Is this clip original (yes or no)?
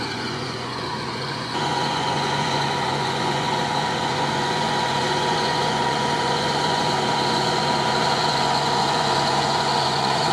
no